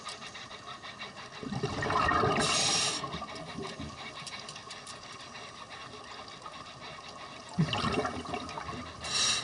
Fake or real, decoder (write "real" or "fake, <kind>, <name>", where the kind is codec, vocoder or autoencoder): real